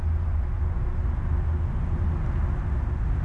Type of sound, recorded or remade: recorded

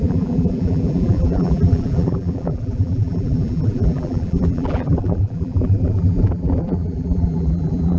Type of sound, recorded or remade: remade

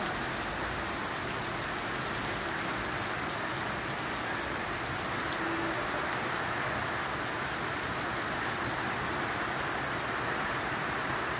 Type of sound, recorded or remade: recorded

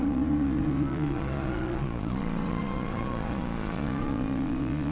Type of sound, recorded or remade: remade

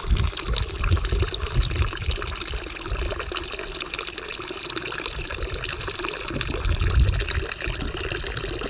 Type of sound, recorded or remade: recorded